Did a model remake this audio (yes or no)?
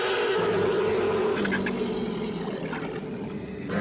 no